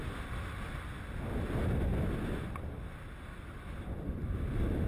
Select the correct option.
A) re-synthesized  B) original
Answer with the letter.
B